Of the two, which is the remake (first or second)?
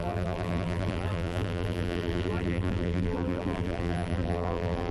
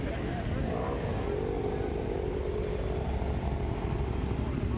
first